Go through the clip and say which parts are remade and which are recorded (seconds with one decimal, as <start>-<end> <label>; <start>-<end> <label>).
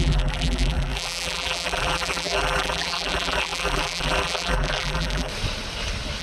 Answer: 0.0-5.3 remade; 5.3-6.2 recorded